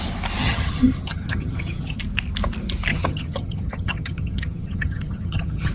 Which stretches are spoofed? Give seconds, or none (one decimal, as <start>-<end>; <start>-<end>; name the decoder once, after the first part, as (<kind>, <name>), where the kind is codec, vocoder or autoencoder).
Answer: 0.4-2.0 (vocoder, HiFi-GAN); 2.9-5.7